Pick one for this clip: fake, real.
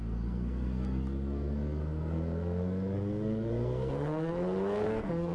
fake